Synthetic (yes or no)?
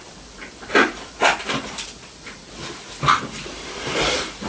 no